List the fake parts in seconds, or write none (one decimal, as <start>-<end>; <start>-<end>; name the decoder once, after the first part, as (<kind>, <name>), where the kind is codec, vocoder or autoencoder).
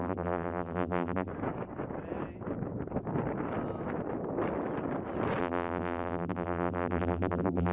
0.0-1.3 (vocoder, BigVGAN v2); 5.4-7.7